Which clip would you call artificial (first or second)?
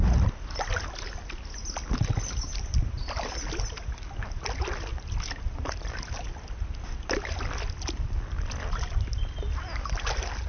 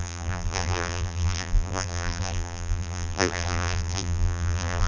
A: second